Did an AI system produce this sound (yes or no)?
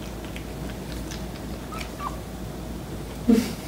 no